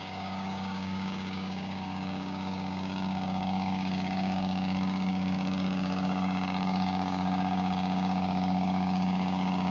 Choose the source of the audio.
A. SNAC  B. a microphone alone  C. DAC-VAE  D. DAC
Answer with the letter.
D